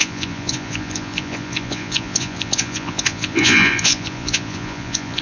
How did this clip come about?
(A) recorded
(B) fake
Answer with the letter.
B